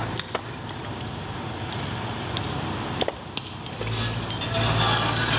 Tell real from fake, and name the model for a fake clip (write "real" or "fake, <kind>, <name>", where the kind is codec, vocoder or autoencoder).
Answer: real